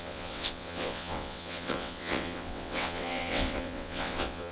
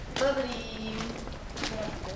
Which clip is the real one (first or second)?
second